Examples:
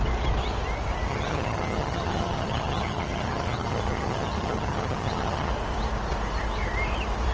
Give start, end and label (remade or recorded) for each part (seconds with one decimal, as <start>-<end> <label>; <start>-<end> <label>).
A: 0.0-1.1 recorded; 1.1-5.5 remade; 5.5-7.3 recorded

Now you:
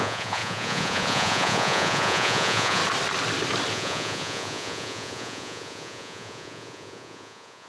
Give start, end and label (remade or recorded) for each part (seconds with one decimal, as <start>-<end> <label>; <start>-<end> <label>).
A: 0.0-2.8 remade; 2.8-3.7 recorded; 3.7-7.7 remade

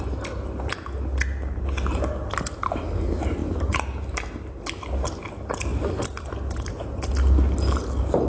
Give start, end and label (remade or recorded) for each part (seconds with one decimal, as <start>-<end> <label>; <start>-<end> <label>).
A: 0.0-5.7 recorded; 5.7-6.8 remade; 6.8-8.3 recorded